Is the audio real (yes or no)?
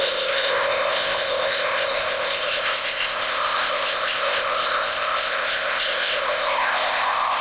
no